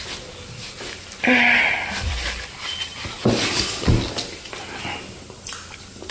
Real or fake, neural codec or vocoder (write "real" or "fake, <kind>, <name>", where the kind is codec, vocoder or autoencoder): real